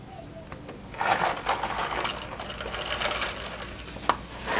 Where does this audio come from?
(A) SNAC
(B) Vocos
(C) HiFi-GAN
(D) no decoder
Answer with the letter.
D